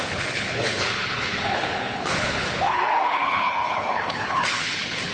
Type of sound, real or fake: fake